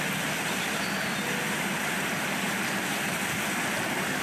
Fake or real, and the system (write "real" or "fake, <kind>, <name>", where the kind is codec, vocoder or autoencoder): real